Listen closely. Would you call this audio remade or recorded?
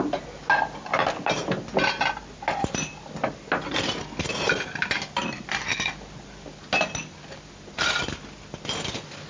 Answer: recorded